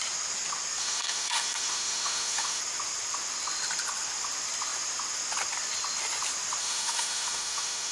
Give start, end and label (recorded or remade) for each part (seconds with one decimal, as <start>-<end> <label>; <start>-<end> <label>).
0.0-0.8 recorded; 0.8-2.6 remade; 2.6-6.6 recorded; 6.6-7.9 remade